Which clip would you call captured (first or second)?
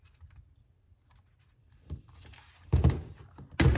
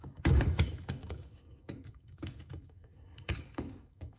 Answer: first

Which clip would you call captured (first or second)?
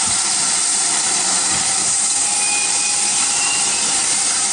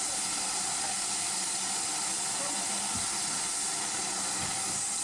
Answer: second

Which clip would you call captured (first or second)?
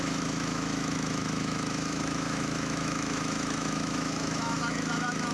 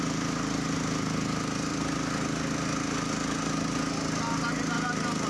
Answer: second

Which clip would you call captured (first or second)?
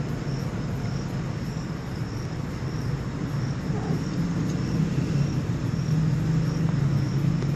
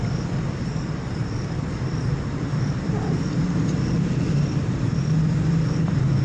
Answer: first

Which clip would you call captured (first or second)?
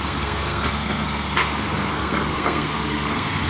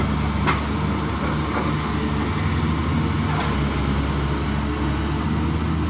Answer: second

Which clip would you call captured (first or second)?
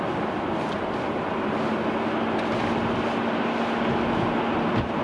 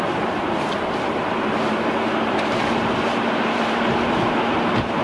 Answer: first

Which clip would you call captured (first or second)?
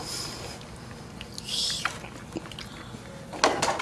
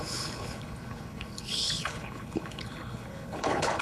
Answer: first